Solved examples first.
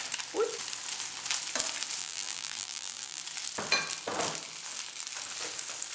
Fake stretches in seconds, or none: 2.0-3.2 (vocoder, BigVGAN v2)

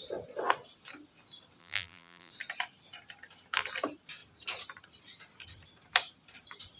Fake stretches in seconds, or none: 1.6-2.3 (vocoder, BigVGAN v2)

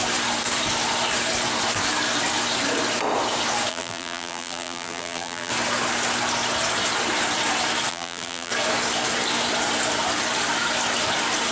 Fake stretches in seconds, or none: 3.7-5.5 (vocoder, BigVGAN v2); 7.9-8.5

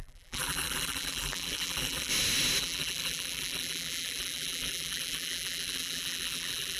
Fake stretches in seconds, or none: 0.0-2.1 (vocoder, BigVGAN v2); 2.6-6.8

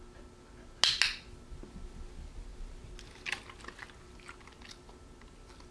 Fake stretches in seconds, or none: none